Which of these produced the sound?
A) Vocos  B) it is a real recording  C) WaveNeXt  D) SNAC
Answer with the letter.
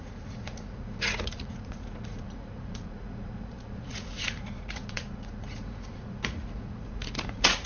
A